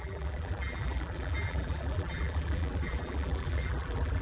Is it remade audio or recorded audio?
remade